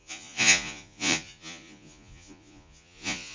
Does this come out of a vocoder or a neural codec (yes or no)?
yes